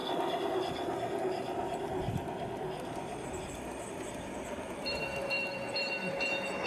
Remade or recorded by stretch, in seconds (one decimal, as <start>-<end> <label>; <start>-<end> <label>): 0.0-4.0 recorded; 4.0-6.7 remade